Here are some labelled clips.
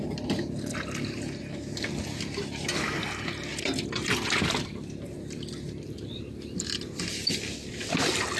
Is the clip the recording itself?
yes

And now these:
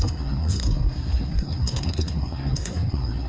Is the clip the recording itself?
no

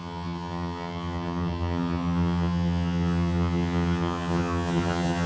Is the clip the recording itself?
no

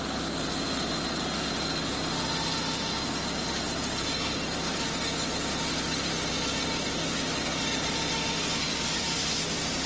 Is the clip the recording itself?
yes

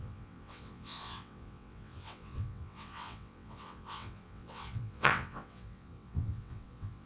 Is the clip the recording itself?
no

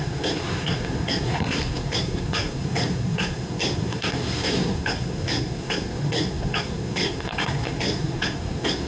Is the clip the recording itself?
no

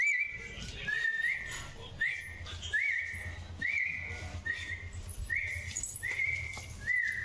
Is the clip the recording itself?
yes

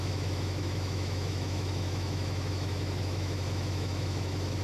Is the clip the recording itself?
no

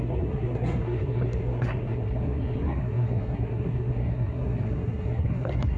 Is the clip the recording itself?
no